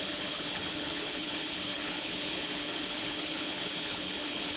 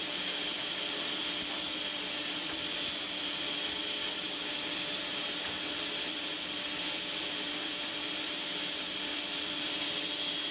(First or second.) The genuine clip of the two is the second